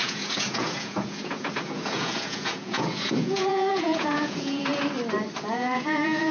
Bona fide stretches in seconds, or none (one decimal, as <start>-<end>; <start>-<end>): 4.7-5.4